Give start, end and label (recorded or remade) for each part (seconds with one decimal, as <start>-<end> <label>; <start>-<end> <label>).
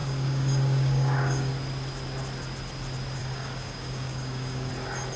0.0-1.5 remade; 1.5-3.2 recorded; 3.2-4.7 remade; 4.7-5.2 recorded